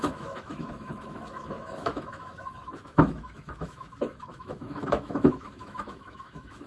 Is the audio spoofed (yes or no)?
yes